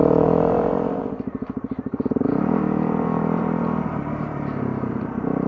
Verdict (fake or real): fake